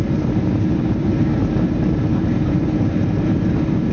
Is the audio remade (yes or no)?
yes